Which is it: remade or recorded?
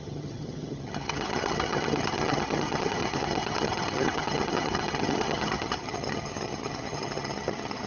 remade